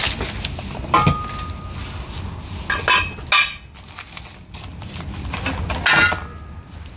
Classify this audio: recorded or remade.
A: recorded